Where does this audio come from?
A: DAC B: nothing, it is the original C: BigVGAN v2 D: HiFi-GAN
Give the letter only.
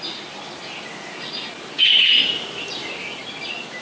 B